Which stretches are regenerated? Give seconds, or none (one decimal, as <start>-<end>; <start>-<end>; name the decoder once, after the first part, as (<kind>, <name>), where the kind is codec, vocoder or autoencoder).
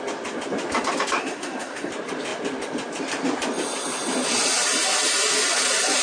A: 1.2-1.9 (codec, SNAC)